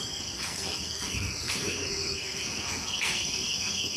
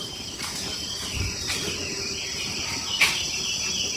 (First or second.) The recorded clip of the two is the second